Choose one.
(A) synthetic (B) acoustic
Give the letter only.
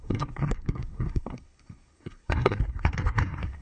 A